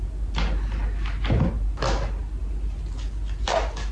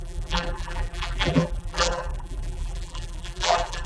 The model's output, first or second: second